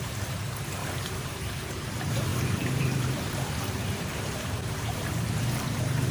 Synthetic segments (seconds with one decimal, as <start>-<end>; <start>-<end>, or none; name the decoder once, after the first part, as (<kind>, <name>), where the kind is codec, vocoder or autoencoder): 0.0-6.1 (vocoder, BigVGAN v2)